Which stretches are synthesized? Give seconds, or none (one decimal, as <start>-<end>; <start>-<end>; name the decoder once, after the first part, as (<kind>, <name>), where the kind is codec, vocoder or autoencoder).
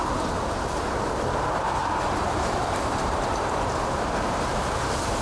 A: 1.8-4.8 (vocoder, BigVGAN v2)